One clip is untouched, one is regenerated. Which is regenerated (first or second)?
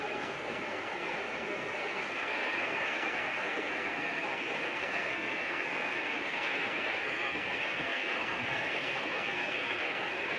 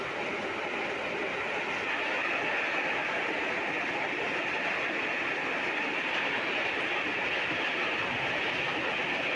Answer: first